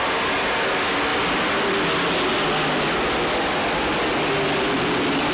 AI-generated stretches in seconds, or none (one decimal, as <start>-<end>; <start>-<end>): none